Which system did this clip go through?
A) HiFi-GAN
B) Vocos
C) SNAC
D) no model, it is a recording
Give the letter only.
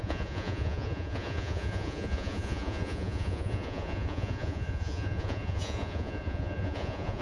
B